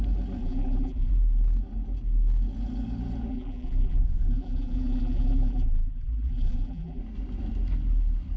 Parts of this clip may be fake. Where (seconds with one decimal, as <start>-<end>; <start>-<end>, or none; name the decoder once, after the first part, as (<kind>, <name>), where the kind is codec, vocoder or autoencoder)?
0.4-1.1 (vocoder, BigVGAN v2); 3.3-7.0